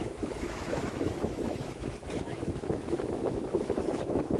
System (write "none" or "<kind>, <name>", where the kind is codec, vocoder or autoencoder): autoencoder, DAC-VAE